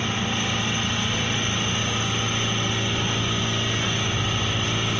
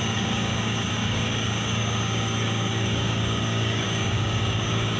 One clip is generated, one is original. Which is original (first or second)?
first